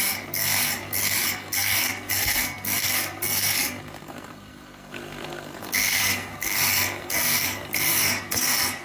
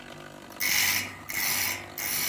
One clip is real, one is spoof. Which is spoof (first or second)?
first